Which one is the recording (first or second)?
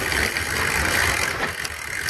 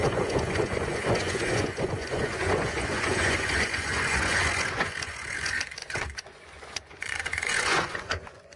first